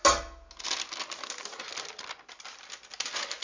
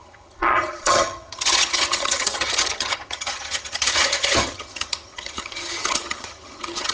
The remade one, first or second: second